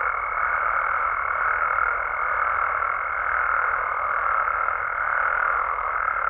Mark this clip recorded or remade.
recorded